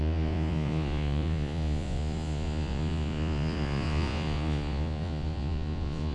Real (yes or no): no